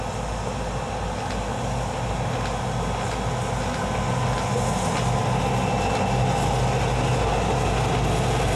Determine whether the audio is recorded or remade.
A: recorded